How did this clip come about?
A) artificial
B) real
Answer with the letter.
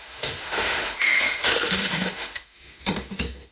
A